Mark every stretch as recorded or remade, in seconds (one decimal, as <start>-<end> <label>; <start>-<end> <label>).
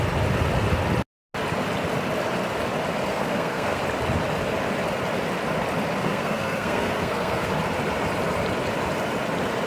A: 0.0-3.1 recorded; 3.1-3.8 remade; 3.8-6.0 recorded; 6.0-7.5 remade; 7.5-9.7 recorded